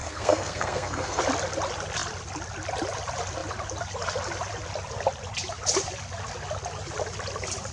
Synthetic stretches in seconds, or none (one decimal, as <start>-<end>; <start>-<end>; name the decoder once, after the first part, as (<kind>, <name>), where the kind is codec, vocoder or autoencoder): 0.0-1.2 (codec, SNAC)